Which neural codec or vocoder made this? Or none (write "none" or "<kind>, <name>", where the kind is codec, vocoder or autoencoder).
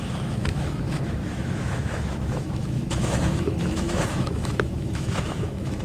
autoencoder, DAC-VAE